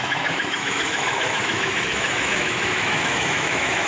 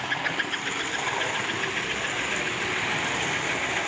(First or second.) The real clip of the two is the second